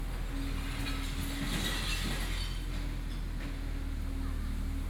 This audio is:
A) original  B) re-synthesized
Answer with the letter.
A